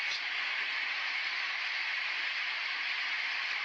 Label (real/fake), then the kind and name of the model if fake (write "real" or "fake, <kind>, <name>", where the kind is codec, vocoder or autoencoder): real